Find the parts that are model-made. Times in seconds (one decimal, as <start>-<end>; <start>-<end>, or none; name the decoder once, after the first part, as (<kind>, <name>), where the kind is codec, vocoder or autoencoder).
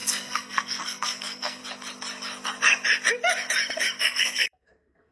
0.0-1.6 (codec, SNAC); 4.0-5.1